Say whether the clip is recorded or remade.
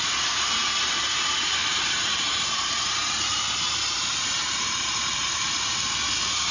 remade